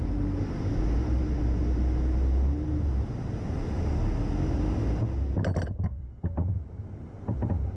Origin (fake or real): real